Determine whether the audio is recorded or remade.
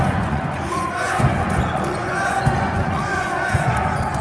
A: remade